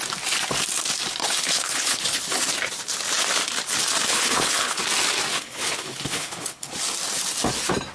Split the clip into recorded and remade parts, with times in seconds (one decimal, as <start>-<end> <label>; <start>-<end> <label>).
0.0-1.2 recorded; 1.2-2.2 remade; 2.2-4.1 recorded; 4.1-4.8 remade; 4.8-5.3 recorded; 5.3-6.7 remade; 6.7-7.9 recorded